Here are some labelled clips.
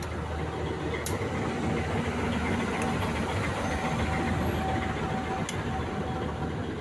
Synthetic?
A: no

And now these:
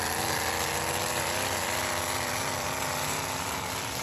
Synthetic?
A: no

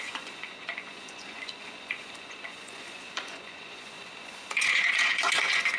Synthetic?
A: yes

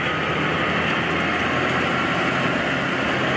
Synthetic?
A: no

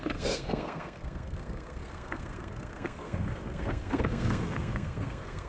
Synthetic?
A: yes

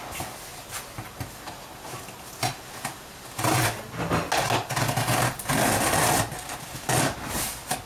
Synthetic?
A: no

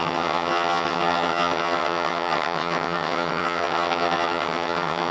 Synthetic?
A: yes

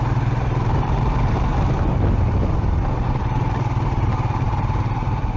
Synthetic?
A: yes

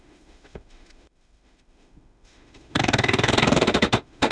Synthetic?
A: yes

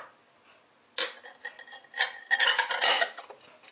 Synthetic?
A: no